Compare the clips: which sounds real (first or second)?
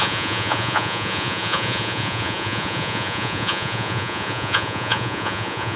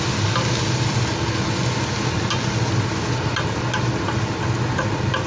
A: second